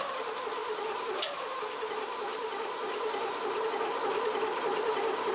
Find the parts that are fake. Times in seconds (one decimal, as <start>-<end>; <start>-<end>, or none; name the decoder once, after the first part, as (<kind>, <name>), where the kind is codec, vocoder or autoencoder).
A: 0.0-5.3 (vocoder, BigVGAN v2)